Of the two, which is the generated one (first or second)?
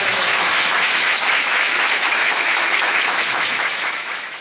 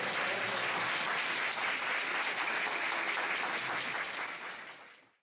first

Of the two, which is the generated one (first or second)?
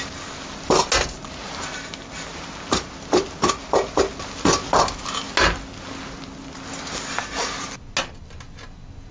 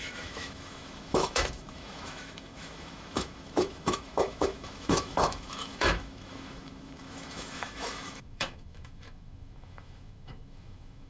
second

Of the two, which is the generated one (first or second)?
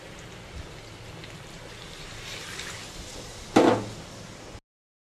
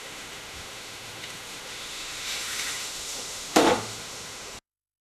second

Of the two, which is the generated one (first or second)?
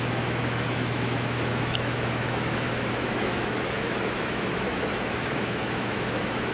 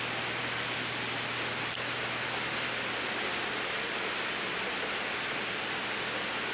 first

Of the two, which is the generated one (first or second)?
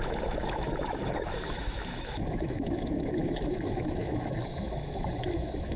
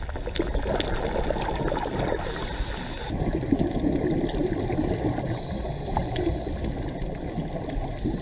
first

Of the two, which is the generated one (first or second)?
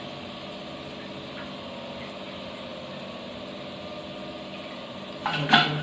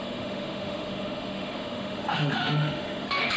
second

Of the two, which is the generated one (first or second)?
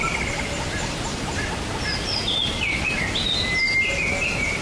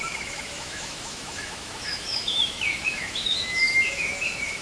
second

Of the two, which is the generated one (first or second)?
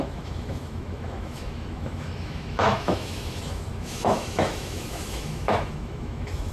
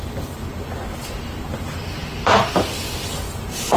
first